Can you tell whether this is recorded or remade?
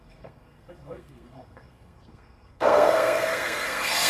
remade